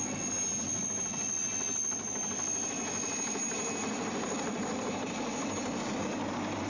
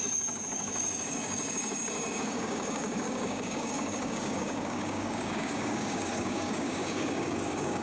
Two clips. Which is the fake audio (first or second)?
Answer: second